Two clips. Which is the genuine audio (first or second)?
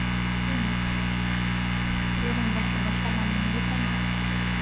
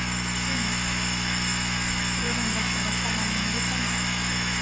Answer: first